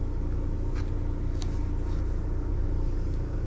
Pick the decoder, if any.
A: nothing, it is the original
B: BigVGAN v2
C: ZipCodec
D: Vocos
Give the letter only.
A